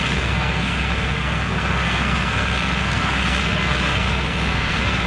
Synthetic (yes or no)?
yes